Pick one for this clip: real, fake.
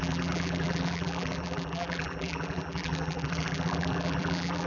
fake